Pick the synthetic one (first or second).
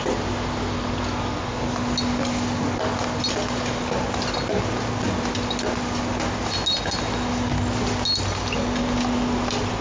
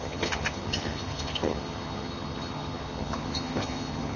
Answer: second